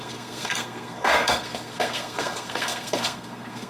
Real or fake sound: fake